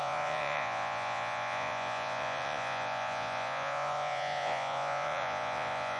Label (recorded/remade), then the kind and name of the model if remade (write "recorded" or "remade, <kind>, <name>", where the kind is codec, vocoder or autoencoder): remade, vocoder, Vocos